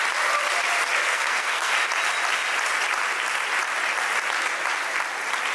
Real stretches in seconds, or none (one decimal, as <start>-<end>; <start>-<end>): 0.0-1.0; 1.7-5.5